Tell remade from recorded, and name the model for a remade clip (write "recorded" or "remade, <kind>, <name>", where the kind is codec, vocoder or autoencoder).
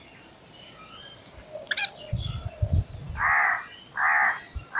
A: recorded